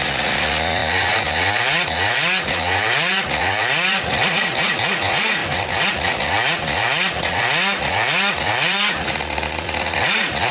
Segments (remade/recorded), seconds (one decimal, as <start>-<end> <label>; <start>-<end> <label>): 0.0-5.4 remade; 5.4-5.9 recorded; 5.9-10.5 remade